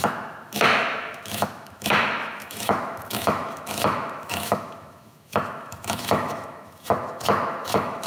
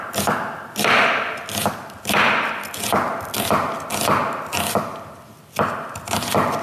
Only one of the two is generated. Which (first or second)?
first